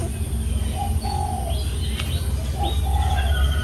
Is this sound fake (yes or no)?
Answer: no